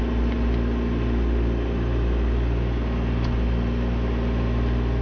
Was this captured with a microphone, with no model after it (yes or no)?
yes